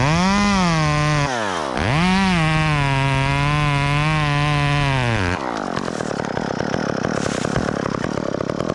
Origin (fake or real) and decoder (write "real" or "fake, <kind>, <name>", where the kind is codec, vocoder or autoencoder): real